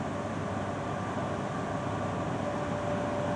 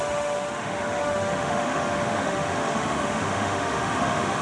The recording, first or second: first